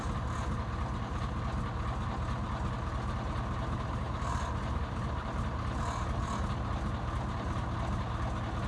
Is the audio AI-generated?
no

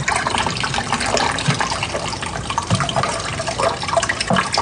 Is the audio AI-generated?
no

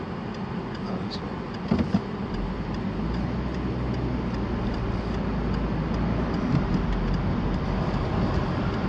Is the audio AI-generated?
no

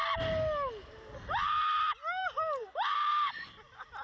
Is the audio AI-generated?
no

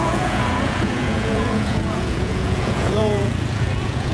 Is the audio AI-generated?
yes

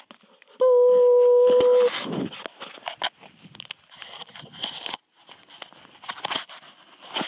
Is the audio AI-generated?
no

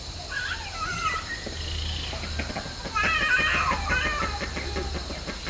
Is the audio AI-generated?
no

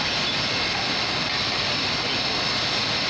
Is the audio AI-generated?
no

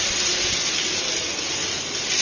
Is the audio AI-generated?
no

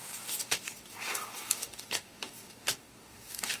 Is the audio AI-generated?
yes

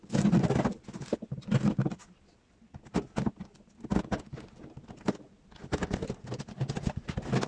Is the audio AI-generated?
no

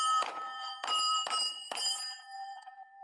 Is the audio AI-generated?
yes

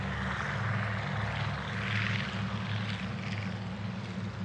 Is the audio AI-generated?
no